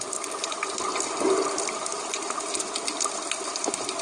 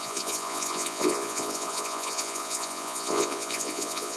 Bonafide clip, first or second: first